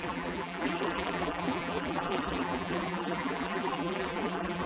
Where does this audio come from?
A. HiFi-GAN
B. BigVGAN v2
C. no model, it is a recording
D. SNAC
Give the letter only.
B